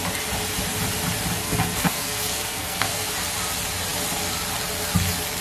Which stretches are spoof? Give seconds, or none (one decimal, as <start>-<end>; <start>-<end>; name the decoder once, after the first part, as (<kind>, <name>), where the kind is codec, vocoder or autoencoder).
1.4-3.1 (codec, SNAC)